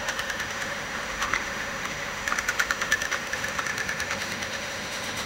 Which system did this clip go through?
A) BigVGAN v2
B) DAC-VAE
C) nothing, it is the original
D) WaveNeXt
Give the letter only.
B